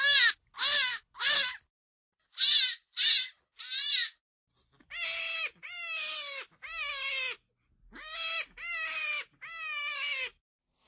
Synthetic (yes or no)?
no